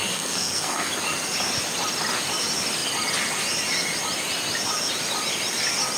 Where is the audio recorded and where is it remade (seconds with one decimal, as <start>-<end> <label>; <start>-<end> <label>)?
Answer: 0.0-0.9 remade; 0.9-6.0 recorded